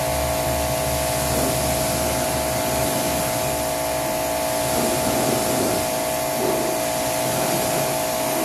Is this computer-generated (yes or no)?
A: no